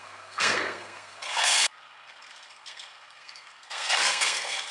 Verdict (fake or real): fake